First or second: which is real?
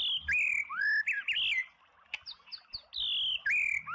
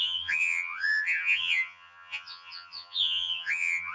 first